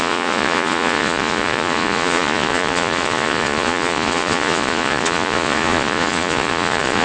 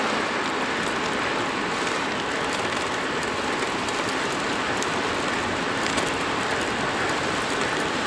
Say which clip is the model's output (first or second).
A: first